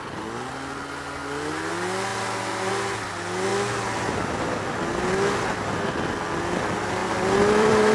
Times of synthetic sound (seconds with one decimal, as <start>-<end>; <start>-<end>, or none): 7.0-7.9